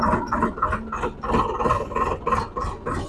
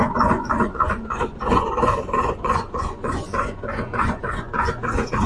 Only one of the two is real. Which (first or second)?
first